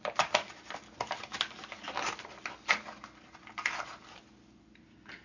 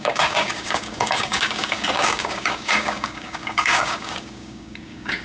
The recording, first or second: first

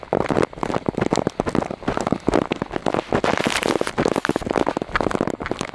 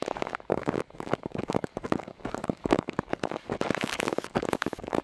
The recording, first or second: first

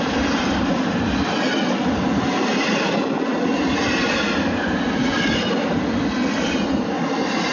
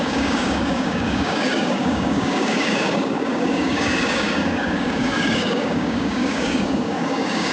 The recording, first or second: first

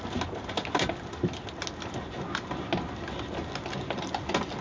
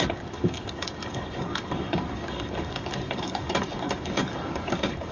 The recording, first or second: first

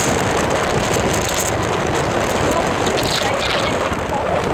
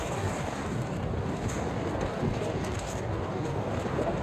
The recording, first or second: first